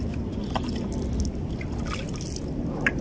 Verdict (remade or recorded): recorded